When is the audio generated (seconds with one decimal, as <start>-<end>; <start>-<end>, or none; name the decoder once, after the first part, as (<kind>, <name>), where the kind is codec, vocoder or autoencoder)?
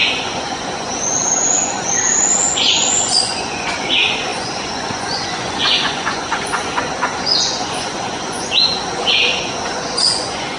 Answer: 0.0-10.6 (vocoder, Vocos)